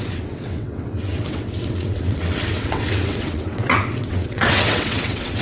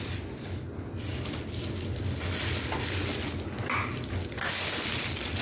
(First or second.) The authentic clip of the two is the second